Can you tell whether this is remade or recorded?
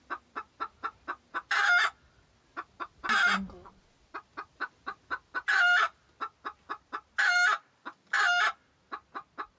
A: recorded